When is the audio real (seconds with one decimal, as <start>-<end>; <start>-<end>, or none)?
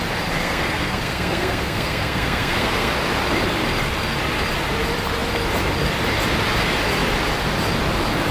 0.0-0.4; 2.9-8.3